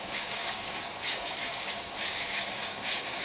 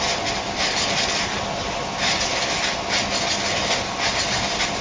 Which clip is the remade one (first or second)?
first